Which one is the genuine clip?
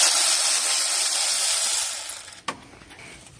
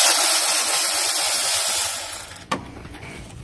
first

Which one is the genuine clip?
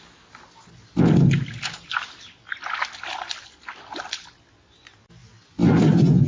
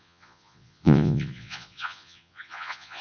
first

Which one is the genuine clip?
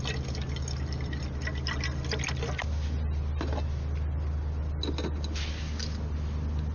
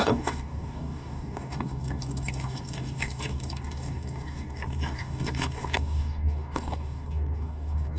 first